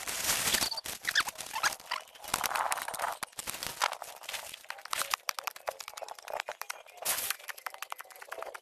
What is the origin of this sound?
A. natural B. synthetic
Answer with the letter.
A